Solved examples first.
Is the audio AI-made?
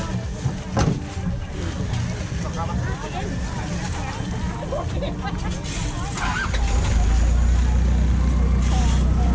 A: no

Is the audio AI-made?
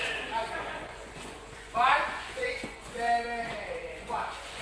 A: yes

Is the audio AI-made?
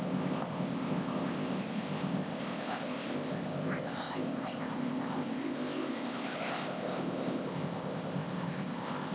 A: yes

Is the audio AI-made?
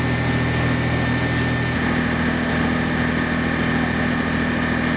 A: no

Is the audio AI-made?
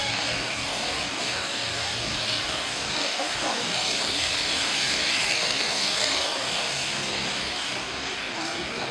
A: yes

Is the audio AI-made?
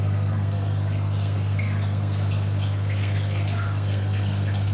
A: yes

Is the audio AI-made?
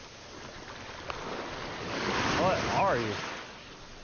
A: no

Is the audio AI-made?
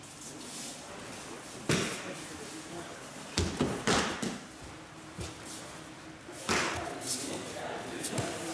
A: no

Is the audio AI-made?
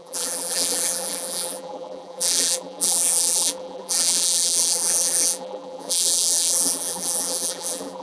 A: yes